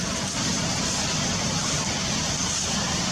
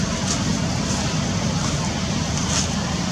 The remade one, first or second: first